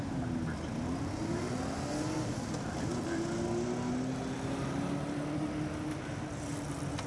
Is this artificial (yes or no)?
no